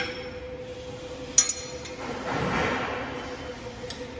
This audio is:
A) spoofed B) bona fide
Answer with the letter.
B